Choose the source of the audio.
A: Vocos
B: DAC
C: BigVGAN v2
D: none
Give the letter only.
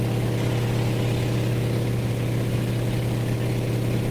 D